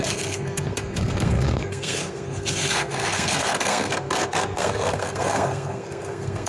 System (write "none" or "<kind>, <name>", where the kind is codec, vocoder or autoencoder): codec, SNAC